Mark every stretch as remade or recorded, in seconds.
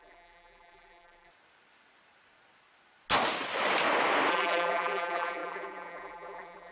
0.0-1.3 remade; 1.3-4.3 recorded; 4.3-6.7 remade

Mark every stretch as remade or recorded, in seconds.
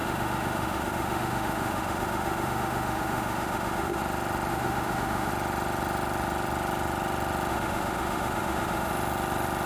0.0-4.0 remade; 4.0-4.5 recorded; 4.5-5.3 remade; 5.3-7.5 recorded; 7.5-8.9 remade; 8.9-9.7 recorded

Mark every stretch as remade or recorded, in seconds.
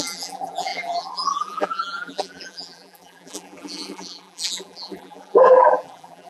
0.0-6.3 remade